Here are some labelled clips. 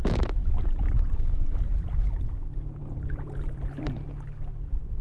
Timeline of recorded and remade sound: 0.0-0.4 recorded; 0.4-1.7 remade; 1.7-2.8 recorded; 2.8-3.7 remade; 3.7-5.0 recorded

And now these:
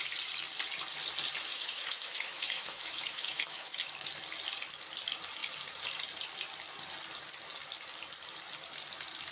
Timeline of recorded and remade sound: 0.0-1.5 recorded; 1.5-3.9 remade; 3.9-9.3 recorded